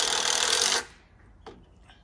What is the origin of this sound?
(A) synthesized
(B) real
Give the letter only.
B